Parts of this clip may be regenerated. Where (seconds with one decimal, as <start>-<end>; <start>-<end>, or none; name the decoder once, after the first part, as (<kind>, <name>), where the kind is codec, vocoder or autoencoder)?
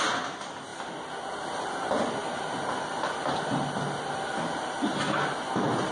none